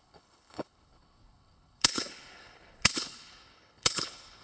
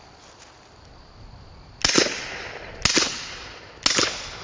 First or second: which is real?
second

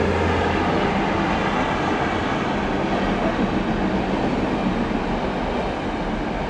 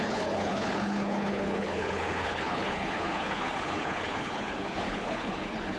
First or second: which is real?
first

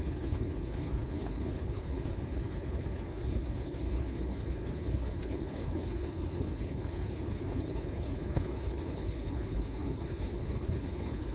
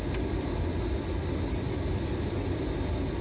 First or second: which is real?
second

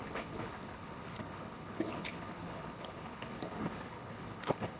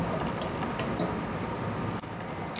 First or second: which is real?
second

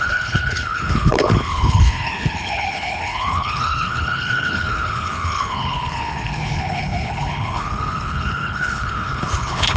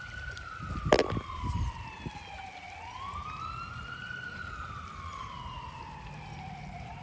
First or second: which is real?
second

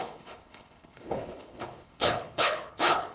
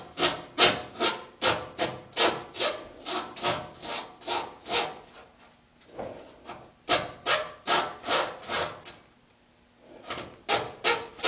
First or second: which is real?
second